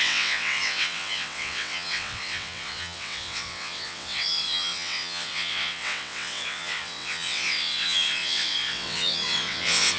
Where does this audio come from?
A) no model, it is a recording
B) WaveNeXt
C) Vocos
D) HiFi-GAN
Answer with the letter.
B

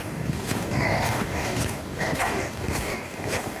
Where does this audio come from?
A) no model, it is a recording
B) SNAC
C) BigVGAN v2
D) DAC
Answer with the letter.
D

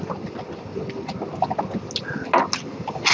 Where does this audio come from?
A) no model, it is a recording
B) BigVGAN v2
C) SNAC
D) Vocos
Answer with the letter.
A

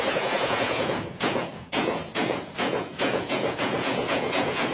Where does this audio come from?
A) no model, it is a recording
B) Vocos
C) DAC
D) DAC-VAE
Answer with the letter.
B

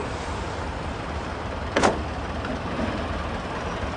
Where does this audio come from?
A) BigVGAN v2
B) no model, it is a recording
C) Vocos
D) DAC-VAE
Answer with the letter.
A